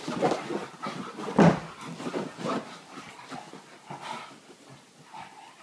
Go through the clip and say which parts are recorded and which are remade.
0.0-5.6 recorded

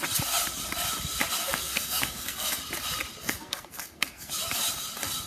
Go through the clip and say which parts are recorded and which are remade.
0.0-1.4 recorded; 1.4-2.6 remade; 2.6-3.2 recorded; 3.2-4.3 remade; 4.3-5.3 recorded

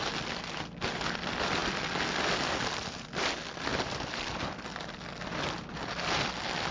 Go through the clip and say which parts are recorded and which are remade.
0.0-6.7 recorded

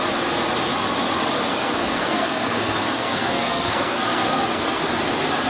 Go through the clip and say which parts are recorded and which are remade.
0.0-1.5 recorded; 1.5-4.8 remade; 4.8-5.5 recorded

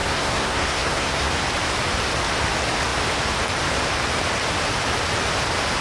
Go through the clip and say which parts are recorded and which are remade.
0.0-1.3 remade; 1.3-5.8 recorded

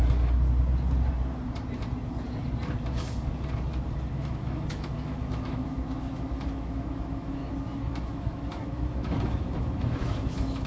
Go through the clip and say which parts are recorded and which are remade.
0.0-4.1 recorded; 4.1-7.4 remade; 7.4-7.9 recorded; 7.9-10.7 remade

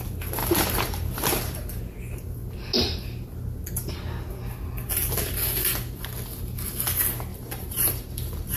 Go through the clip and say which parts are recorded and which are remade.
0.0-0.4 recorded; 0.4-1.8 remade; 1.8-7.3 recorded; 7.3-8.6 remade